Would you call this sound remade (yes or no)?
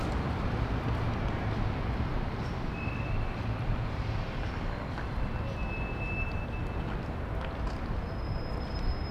no